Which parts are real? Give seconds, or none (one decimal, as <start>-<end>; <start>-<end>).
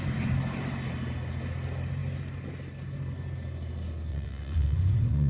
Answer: 0.0-4.1